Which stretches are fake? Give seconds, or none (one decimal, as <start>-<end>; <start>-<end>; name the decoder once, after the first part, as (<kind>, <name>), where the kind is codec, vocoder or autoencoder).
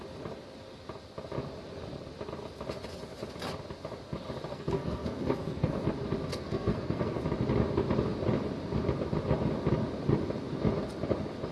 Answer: 4.5-5.8 (codec, SNAC); 6.3-7.2